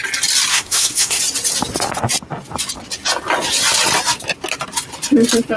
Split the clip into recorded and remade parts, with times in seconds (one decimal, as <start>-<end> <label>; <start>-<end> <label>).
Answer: 0.0-0.5 recorded; 0.5-1.2 remade; 1.2-5.6 recorded